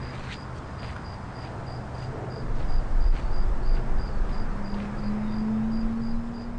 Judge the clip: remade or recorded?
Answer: recorded